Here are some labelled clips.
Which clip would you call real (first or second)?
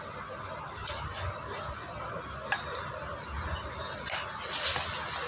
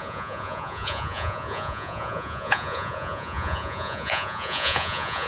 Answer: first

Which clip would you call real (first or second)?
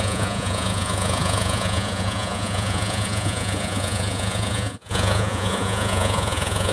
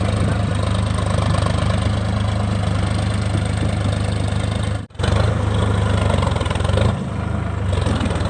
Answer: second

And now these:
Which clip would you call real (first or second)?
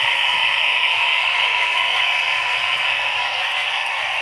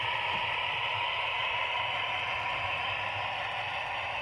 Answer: second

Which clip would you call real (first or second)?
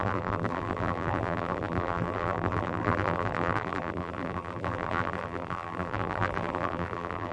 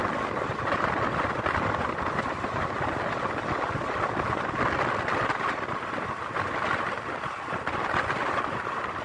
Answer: second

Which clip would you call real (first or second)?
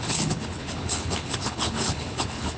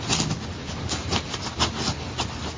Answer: second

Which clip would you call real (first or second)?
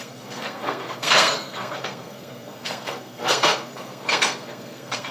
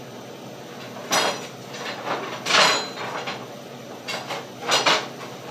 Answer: second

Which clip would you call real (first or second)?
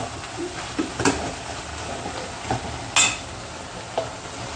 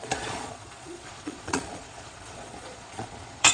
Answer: first